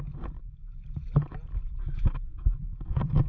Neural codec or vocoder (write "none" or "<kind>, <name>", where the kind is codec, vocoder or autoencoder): none